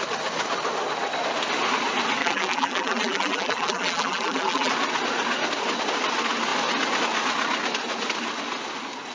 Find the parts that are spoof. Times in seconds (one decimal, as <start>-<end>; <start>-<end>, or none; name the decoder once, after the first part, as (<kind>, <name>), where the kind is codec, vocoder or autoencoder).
2.2-4.7 (vocoder, BigVGAN v2)